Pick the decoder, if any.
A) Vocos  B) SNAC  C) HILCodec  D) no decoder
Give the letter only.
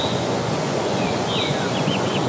A